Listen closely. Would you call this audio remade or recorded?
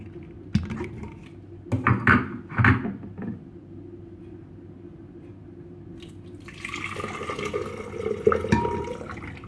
recorded